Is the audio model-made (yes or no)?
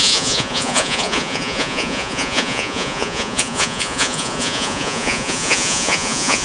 yes